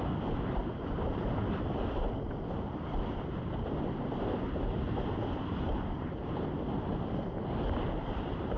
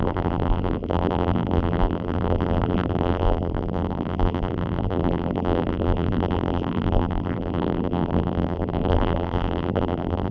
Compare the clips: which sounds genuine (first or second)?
first